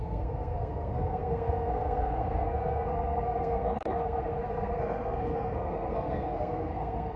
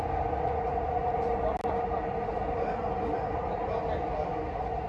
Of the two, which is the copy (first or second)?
first